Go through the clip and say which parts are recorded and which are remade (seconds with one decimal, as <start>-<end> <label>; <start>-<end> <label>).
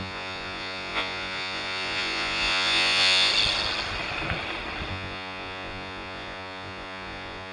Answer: 0.0-3.3 remade; 3.3-4.9 recorded; 4.9-7.5 remade